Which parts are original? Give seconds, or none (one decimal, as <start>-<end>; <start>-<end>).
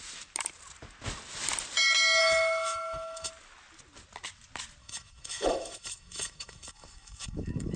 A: 0.0-2.2; 3.3-4.8